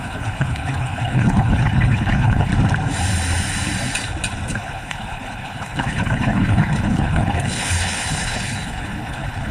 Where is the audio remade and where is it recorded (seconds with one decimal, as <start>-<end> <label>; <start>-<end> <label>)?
0.0-2.5 remade; 2.5-4.5 recorded; 4.5-9.5 remade